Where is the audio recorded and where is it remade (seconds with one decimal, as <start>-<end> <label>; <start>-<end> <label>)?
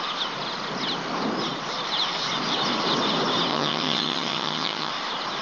0.0-3.5 recorded; 3.5-4.9 remade; 4.9-5.4 recorded